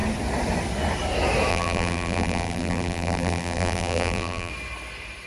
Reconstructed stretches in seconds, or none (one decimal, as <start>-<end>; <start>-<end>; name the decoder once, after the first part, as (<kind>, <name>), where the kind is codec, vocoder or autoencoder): 1.5-4.5 (vocoder, BigVGAN v2)